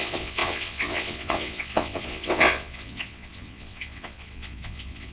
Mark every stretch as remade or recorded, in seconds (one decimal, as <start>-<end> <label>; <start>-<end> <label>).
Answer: 0.0-5.1 remade